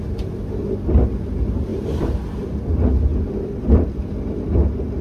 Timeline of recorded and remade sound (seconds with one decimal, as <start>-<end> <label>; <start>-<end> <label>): 0.0-1.7 recorded; 1.7-2.6 remade; 2.6-5.0 recorded